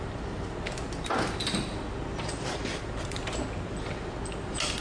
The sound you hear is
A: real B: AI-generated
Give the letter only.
A